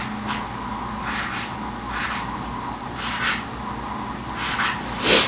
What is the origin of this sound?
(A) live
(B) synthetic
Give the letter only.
A